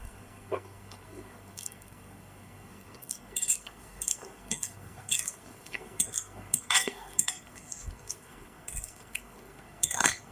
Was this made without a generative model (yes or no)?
no